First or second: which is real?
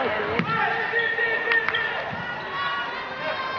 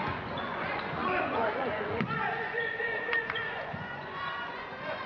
first